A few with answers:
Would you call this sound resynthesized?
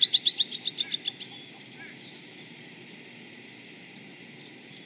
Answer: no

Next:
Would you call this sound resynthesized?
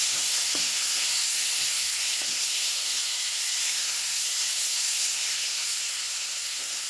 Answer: yes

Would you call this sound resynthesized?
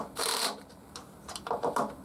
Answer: yes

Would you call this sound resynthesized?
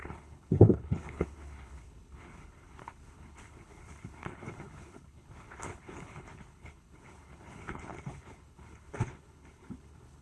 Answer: yes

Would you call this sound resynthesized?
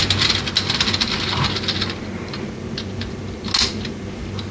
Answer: no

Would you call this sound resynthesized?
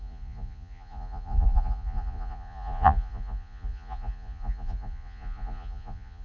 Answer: yes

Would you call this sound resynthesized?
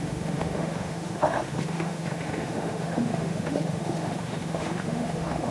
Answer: yes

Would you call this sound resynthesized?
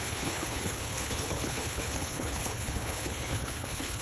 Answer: yes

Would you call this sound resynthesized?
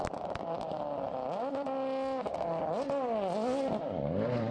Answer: no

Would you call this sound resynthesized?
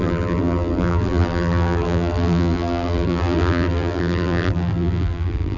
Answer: yes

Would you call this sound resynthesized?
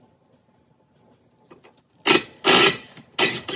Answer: no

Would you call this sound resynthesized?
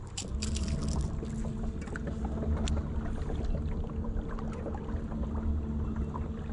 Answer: no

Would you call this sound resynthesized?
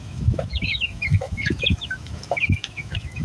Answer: yes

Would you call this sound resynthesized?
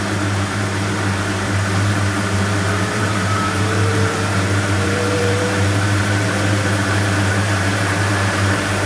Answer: yes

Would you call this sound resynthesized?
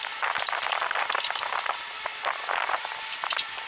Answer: no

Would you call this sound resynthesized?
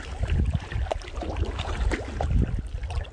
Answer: no